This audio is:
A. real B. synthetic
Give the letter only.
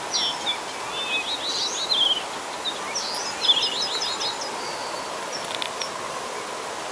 A